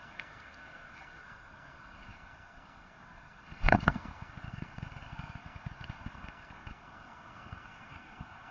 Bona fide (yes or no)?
no